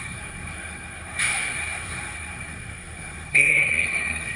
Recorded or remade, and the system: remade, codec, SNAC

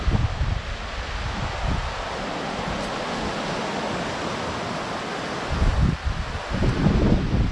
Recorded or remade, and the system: recorded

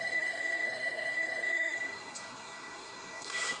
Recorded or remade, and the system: remade, codec, SNAC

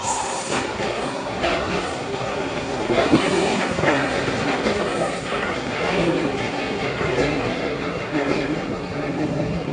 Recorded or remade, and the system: remade, codec, SNAC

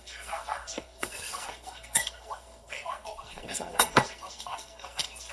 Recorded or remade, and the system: remade, codec, SNAC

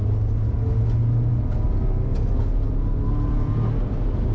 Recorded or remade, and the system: recorded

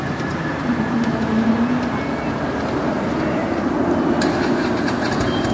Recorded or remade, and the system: recorded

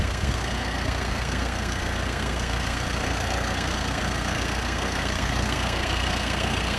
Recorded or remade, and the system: remade, codec, SNAC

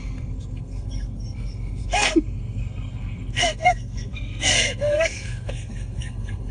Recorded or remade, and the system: remade, codec, SNAC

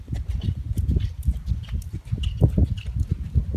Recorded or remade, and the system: recorded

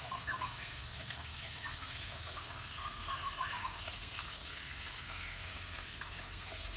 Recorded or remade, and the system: remade, codec, SNAC